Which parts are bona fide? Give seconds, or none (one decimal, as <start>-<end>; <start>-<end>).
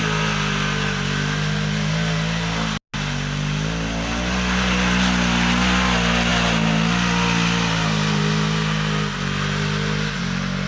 0.0-10.7